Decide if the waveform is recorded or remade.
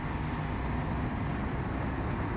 recorded